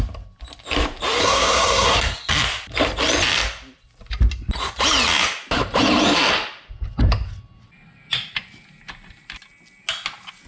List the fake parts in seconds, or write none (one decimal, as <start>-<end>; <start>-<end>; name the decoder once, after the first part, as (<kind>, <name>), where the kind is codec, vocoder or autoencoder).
1.2-2.3 (codec, SNAC)